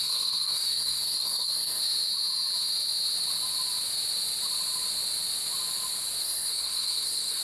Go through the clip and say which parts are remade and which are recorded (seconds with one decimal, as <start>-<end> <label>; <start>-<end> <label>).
0.0-1.8 remade; 1.8-6.2 recorded; 6.2-7.4 remade

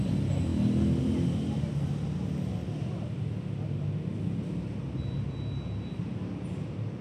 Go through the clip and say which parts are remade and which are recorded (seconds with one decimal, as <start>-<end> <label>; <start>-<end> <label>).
0.0-7.0 recorded

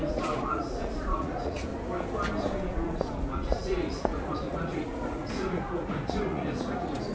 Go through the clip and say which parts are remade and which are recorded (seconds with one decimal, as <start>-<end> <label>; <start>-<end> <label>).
0.0-1.7 remade; 1.7-2.7 recorded; 2.7-7.1 remade